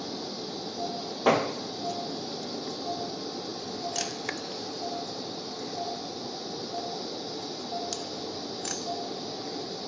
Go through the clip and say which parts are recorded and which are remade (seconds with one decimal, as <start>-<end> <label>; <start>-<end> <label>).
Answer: 0.0-9.9 recorded